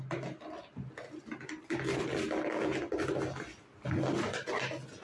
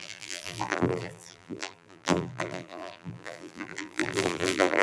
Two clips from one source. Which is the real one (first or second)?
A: first